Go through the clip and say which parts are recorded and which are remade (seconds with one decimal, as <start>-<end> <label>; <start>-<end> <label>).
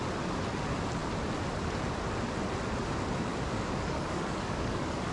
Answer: 0.0-3.3 recorded; 3.3-5.1 remade